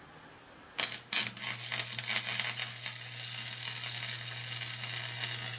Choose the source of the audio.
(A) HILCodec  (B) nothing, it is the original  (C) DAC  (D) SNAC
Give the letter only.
B